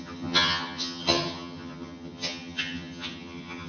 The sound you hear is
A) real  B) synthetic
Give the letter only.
B